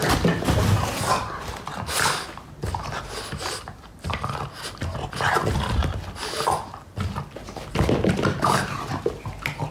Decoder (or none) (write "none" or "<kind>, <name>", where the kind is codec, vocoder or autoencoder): none